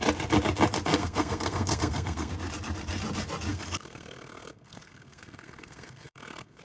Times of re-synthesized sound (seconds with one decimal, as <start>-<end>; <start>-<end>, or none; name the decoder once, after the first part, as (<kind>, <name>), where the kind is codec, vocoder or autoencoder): 0.9-2.3 (codec, SNAC); 3.5-6.6